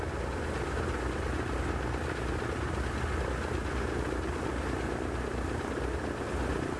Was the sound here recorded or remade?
recorded